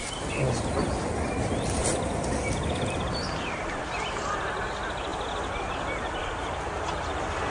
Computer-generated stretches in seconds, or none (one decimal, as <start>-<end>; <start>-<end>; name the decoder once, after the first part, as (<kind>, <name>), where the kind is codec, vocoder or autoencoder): none

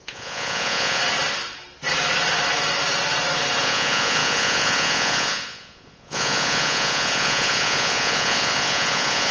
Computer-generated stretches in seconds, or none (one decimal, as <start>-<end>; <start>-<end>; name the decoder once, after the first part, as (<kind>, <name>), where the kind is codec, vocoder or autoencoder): 0.0-1.0 (vocoder, Vocos); 3.6-9.3

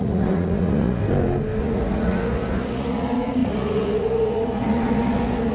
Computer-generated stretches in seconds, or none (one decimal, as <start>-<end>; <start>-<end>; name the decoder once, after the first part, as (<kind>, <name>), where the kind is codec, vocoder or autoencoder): 0.0-1.0 (vocoder, Vocos); 1.6-5.5

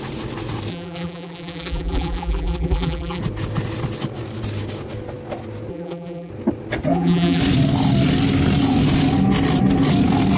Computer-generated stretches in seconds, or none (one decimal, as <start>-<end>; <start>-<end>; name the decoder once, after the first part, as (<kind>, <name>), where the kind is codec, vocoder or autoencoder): 0.7-3.2 (vocoder, BigVGAN v2); 5.7-6.3; 6.9-7.4

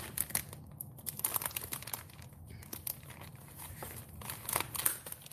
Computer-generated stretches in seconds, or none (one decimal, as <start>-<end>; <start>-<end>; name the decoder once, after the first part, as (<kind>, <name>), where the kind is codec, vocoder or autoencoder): none